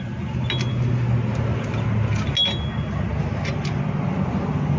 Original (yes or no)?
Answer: yes